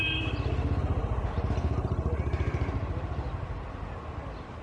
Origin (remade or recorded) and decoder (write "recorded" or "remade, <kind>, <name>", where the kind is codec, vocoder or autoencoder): recorded